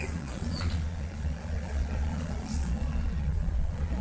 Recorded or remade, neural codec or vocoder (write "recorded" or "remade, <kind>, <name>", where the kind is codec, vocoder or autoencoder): remade, vocoder, Vocos